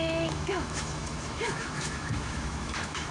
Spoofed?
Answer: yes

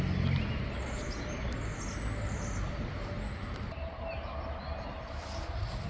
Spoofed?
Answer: no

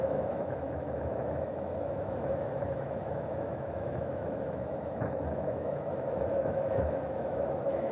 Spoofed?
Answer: yes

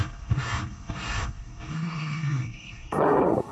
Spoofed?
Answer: yes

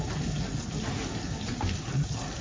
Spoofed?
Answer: no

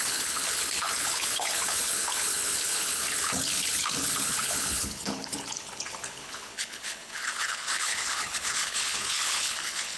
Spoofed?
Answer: yes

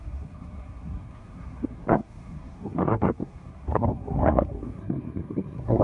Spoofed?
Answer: yes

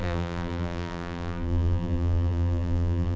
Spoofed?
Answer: yes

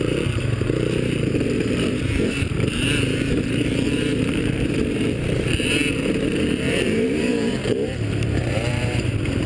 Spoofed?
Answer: yes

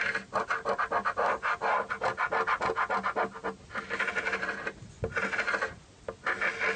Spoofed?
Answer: no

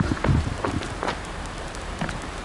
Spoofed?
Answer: yes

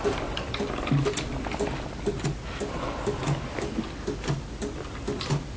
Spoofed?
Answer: no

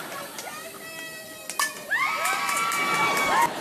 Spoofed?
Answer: yes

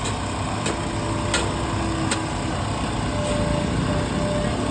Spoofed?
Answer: no